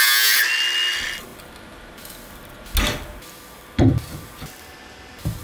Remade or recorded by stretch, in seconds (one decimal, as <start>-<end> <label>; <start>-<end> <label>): 0.0-5.4 recorded